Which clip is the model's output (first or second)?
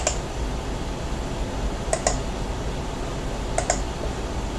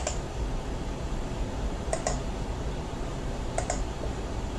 second